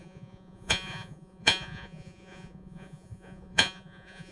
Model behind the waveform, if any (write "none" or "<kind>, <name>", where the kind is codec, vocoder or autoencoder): vocoder, Vocos